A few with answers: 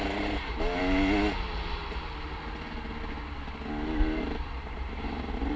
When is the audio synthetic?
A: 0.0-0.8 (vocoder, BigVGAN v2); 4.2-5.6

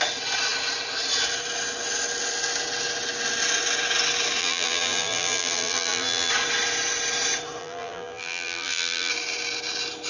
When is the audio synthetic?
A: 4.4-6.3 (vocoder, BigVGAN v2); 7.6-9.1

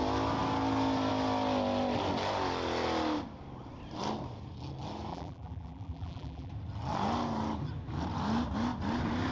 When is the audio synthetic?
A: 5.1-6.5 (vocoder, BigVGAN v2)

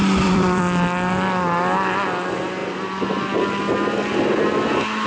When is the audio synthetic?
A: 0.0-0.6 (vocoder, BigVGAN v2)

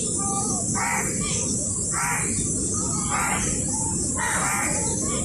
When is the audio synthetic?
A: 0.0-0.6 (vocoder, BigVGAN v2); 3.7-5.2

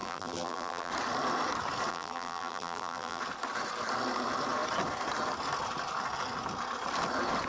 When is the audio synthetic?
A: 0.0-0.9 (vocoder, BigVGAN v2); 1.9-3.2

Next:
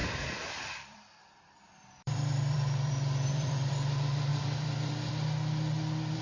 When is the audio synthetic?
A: 0.0-3.7 (vocoder, BigVGAN v2); 4.3-5.1

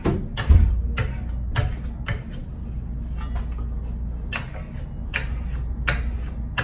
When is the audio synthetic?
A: none